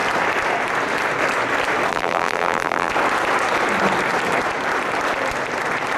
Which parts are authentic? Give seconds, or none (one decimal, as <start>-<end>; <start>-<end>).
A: 0.0-1.9; 2.9-6.0